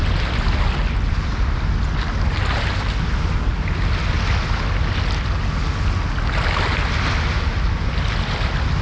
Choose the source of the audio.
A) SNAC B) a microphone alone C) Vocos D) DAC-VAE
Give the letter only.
B